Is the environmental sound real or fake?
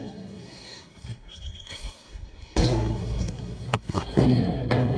fake